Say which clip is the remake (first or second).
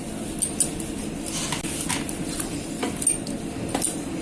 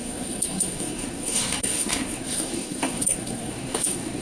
second